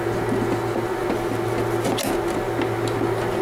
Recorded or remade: recorded